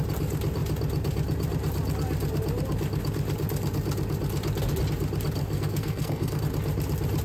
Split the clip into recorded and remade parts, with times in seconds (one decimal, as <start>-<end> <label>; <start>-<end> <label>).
0.0-5.4 recorded; 5.4-6.4 remade; 6.4-7.2 recorded